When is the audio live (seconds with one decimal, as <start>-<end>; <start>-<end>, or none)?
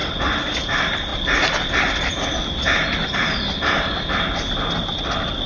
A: 0.0-5.5